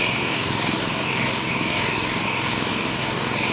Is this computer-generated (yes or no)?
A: yes